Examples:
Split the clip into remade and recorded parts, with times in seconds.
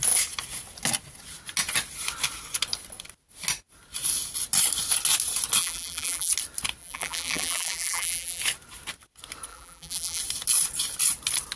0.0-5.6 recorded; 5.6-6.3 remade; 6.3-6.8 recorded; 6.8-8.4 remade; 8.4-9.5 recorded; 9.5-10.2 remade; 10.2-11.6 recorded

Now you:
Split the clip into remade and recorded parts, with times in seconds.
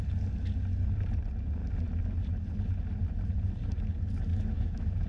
0.0-4.3 recorded; 4.3-5.1 remade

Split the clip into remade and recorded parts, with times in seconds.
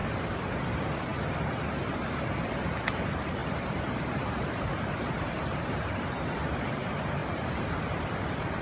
0.0-0.5 remade; 0.5-3.4 recorded; 3.4-6.6 remade; 6.6-7.2 recorded; 7.2-8.6 remade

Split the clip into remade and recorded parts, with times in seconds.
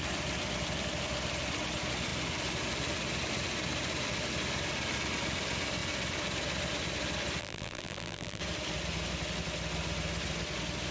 0.0-7.4 recorded; 7.4-8.4 remade; 8.4-10.9 recorded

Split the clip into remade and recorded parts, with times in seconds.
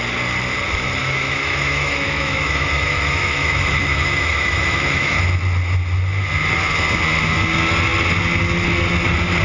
0.0-1.0 recorded; 1.0-5.1 remade; 5.1-9.4 recorded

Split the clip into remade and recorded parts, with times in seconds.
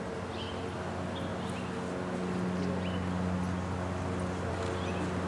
0.0-5.3 recorded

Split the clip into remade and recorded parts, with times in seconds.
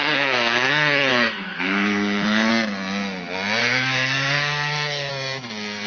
0.0-0.7 remade; 0.7-1.1 recorded; 1.1-2.5 remade; 2.5-3.6 recorded; 3.6-5.1 remade; 5.1-5.9 recorded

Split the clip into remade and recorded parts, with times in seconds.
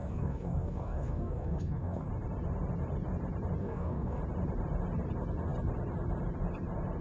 0.0-2.1 remade; 2.1-3.6 recorded; 3.6-4.2 remade; 4.2-7.0 recorded